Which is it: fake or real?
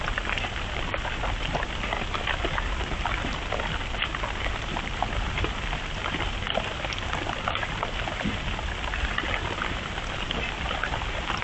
real